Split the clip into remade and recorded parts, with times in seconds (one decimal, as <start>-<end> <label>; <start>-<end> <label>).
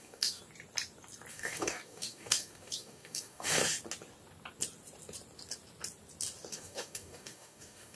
0.0-0.4 remade; 0.4-1.3 recorded; 1.3-3.6 remade; 3.6-6.5 recorded; 6.5-8.0 remade